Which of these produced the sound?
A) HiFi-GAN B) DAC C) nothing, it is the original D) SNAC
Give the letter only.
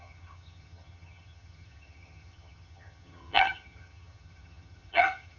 A